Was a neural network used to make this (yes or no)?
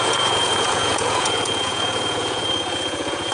yes